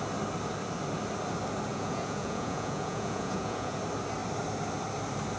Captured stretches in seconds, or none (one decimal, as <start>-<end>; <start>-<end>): 0.0-1.7; 3.8-5.4